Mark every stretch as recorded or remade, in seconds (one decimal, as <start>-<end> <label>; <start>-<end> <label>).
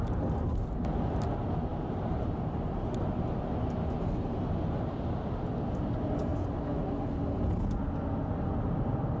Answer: 0.0-9.2 recorded